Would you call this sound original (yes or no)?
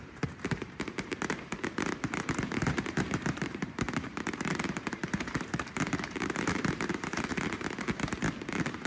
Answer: no